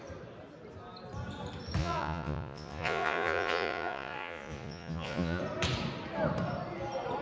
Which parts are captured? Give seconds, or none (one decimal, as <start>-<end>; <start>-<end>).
0.0-1.8; 5.4-7.2